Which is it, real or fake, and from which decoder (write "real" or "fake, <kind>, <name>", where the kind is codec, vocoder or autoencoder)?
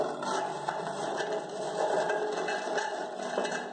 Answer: real